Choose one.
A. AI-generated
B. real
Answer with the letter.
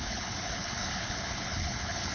A